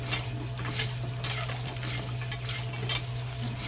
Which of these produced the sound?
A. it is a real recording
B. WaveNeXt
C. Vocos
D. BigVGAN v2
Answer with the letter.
A